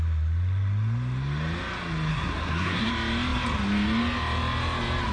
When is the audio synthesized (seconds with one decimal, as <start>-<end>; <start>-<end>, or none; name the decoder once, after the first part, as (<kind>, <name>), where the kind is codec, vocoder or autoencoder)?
2.1-2.9 (codec, SNAC)